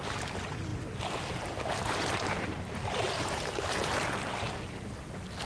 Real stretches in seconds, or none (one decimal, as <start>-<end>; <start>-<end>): 0.0-0.7; 4.0-5.5